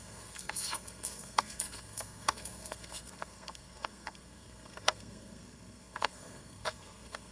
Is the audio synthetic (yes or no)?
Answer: yes